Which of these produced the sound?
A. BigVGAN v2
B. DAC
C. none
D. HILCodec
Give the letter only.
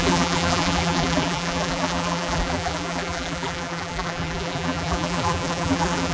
A